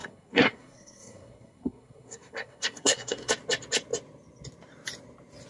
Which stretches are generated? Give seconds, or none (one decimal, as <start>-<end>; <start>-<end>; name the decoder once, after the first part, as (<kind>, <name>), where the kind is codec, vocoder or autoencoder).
0.0-3.3 (codec, SNAC)